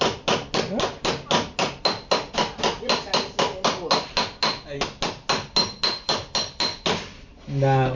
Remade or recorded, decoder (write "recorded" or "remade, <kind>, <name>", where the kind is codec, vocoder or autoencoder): recorded